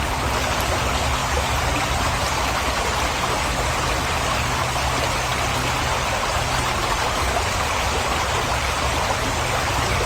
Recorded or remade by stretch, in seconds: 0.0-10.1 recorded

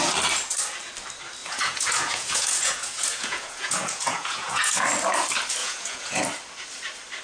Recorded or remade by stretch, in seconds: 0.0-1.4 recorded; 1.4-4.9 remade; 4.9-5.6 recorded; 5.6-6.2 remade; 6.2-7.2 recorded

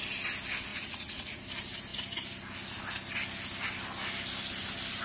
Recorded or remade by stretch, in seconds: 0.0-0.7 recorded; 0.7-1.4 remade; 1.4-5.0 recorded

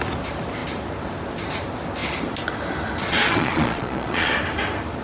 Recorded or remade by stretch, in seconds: 0.0-3.0 recorded; 3.0-4.3 remade; 4.3-5.0 recorded